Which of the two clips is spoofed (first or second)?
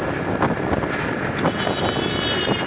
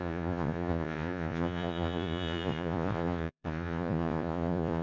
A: second